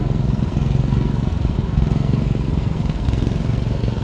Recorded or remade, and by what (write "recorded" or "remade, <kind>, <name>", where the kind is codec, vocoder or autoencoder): remade, codec, SNAC